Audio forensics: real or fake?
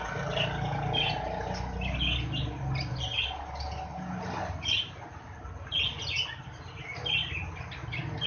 real